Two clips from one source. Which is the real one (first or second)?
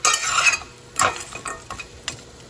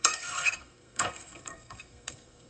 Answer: first